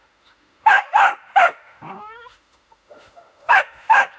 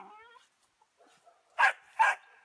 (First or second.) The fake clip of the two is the first